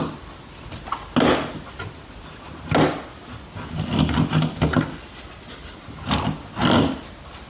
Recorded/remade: recorded